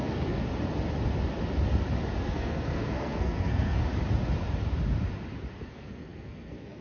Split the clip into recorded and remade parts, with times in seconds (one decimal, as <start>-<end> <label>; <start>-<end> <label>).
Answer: 0.0-0.4 remade; 0.4-2.2 recorded; 2.2-3.8 remade; 3.8-5.6 recorded; 5.6-6.8 remade